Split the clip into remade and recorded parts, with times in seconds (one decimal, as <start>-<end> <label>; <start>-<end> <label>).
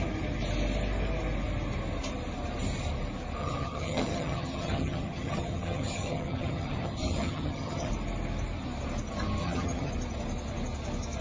0.0-3.4 recorded; 3.4-7.9 remade; 7.9-9.4 recorded; 9.4-9.9 remade; 9.9-11.2 recorded